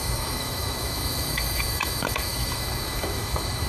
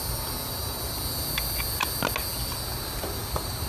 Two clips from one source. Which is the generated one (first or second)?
first